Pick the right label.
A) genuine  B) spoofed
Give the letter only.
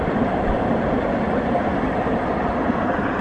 A